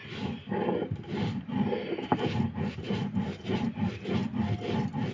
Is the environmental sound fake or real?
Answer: real